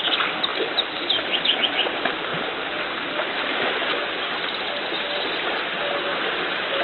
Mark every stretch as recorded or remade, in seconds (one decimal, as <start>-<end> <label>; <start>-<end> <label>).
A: 0.0-6.8 recorded